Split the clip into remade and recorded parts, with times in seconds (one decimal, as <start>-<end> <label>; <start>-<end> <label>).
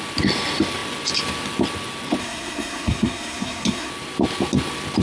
0.0-2.2 recorded; 2.2-3.9 remade; 3.9-5.0 recorded